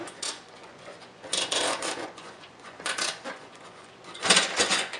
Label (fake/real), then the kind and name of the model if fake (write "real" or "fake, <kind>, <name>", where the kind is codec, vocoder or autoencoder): fake, vocoder, Vocos